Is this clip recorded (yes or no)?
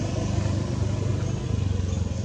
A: yes